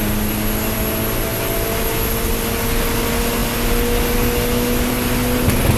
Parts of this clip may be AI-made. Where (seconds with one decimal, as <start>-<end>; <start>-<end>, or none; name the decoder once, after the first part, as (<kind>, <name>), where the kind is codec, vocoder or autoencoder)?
none